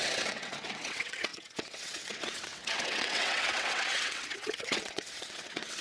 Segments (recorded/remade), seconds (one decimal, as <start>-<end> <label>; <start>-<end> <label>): 0.0-5.8 remade